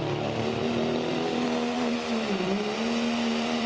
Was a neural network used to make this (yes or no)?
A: yes